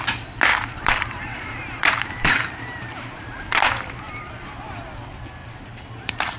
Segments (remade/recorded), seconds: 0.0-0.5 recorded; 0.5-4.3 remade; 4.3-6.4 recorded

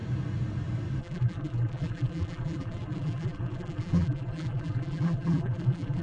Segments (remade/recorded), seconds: 0.0-1.0 recorded; 1.0-6.0 remade

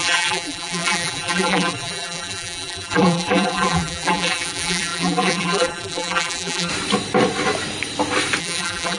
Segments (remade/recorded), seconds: 0.0-6.7 remade; 6.7-8.4 recorded; 8.4-9.0 remade

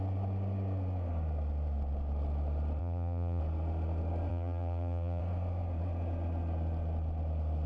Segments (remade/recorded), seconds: 0.0-2.8 recorded; 2.8-3.4 remade; 3.4-4.3 recorded; 4.3-5.2 remade; 5.2-7.7 recorded

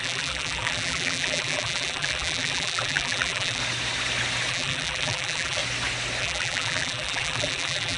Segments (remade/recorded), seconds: 0.0-3.6 remade; 3.6-4.5 recorded; 4.5-5.6 remade; 5.6-6.2 recorded; 6.2-8.0 remade